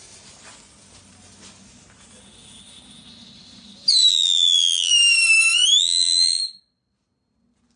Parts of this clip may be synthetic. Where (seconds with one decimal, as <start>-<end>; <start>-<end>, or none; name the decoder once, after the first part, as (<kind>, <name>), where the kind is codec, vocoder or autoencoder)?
4.1-4.9 (vocoder, BigVGAN v2); 5.8-6.4